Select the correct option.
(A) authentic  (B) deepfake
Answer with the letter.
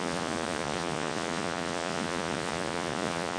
B